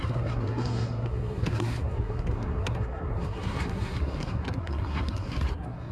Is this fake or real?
fake